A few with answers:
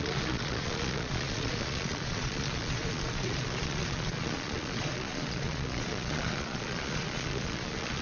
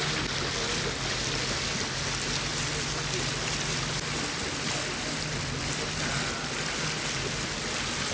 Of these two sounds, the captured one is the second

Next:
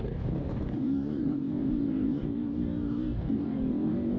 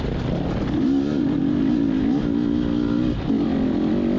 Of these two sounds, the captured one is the second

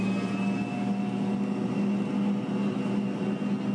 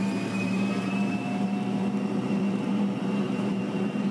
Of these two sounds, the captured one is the first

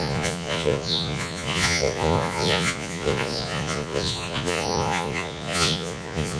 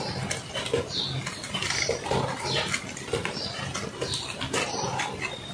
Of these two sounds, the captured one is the second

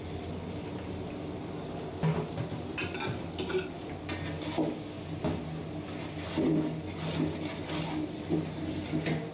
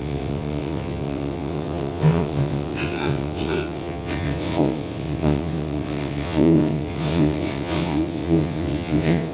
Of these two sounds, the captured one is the first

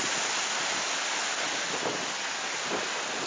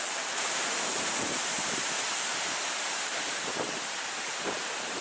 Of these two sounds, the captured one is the first